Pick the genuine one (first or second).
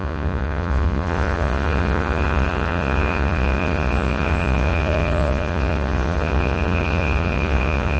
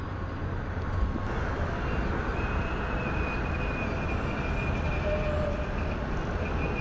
second